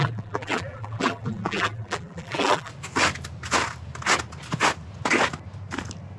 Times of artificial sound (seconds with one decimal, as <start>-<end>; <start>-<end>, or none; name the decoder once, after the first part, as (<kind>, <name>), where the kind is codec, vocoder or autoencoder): 0.0-2.7 (vocoder, BigVGAN v2)